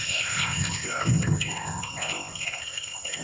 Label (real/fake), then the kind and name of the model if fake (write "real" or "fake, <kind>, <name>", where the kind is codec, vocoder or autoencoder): fake, codec, ZipCodec